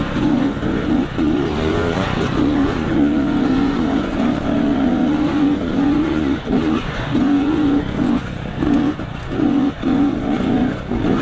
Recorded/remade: remade